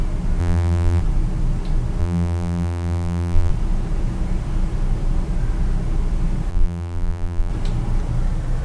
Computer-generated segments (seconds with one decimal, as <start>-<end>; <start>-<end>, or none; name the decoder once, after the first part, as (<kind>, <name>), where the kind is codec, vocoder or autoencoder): 0.4-1.0 (vocoder, BigVGAN v2); 2.0-3.5; 6.5-7.5